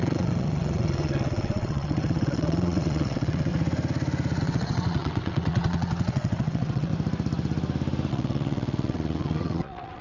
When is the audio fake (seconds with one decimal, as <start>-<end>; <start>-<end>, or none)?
0.0-3.5; 4.4-6.9; 8.1-10.0